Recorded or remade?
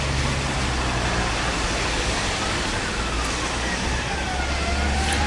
recorded